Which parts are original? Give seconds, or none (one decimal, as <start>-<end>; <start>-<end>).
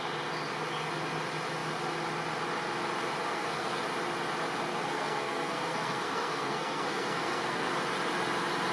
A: 0.0-3.2; 3.8-4.7; 7.7-8.7